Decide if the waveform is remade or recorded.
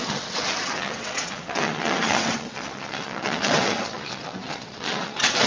remade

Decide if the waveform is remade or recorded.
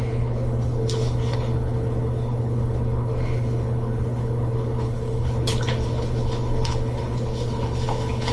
remade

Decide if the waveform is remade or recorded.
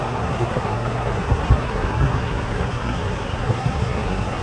remade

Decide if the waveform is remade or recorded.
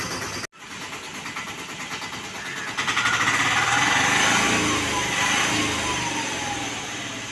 recorded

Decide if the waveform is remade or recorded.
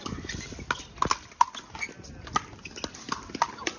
recorded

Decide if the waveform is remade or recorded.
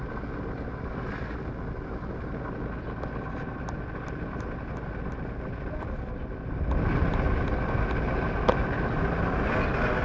recorded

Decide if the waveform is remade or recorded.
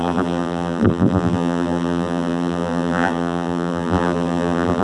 remade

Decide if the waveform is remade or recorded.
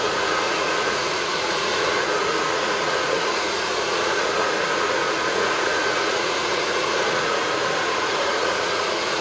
remade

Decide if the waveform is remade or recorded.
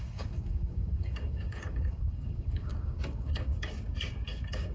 remade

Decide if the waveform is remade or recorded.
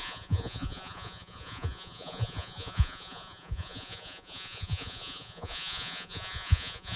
remade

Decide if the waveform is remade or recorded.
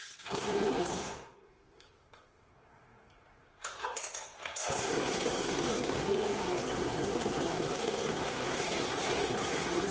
remade